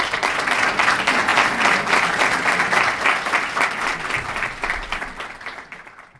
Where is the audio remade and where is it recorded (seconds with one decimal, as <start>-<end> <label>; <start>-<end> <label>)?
0.0-6.2 recorded

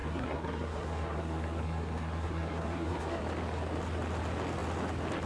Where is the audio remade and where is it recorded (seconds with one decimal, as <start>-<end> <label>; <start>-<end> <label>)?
0.0-3.2 remade; 3.2-5.3 recorded